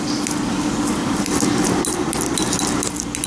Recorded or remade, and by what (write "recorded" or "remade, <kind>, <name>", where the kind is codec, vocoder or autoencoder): recorded